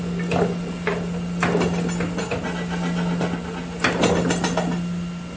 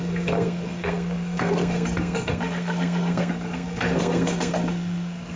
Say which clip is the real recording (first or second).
first